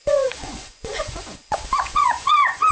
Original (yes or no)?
no